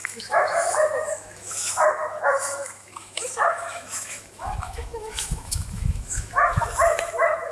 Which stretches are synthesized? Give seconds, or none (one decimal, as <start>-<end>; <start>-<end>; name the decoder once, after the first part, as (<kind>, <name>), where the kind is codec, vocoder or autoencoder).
0.0-7.5 (autoencoder, DAC-VAE)